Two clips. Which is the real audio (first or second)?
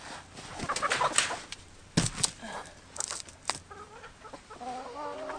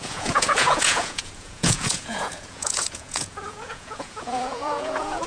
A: first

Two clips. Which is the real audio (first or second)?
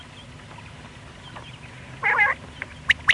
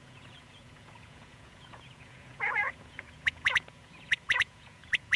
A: first